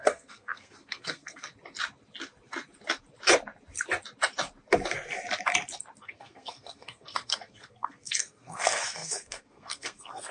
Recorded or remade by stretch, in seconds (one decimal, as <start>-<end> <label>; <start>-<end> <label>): 0.0-1.5 remade; 1.5-6.0 recorded; 6.0-10.3 remade

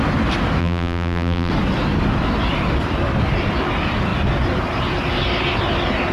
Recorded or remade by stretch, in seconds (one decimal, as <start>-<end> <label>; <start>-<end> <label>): 0.0-0.6 recorded; 0.6-1.5 remade; 1.5-6.1 recorded

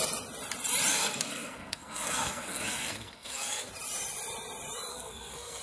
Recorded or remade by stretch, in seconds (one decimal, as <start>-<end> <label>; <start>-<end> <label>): 0.0-0.9 recorded; 0.9-3.7 remade; 3.7-4.9 recorded; 4.9-5.6 remade

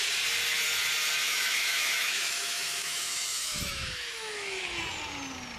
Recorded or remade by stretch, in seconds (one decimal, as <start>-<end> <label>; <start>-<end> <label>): 0.0-1.2 recorded; 1.2-4.6 remade; 4.6-5.6 recorded

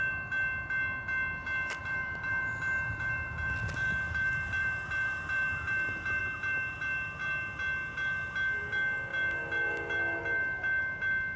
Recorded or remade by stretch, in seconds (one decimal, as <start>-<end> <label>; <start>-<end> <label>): 0.0-1.8 recorded; 1.8-6.2 remade; 6.2-9.1 recorded; 9.1-10.2 remade; 10.2-11.4 recorded